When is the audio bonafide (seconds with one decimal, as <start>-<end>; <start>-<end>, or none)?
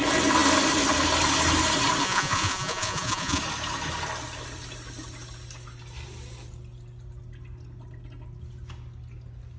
0.0-2.0; 3.4-9.6